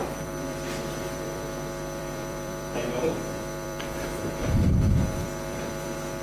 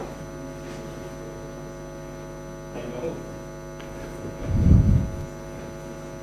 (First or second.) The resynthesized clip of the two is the first